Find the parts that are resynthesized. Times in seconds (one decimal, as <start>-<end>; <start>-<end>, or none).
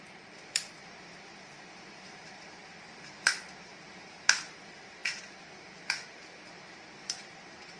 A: 0.0-5.0; 5.6-7.8